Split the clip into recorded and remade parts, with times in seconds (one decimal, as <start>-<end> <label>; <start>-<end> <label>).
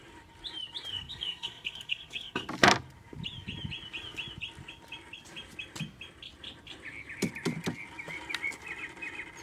0.0-0.9 recorded; 0.9-2.5 remade; 2.5-9.4 recorded